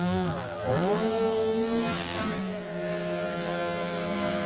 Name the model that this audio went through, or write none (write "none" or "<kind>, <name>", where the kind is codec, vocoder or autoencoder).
vocoder, BigVGAN v2